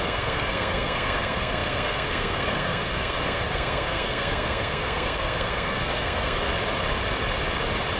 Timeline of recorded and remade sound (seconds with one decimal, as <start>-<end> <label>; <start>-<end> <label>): 0.0-6.5 remade; 6.5-8.0 recorded